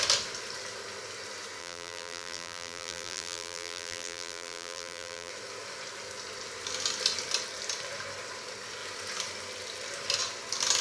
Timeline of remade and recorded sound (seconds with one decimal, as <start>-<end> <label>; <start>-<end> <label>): 0.0-1.6 recorded; 1.6-5.3 remade; 5.3-10.8 recorded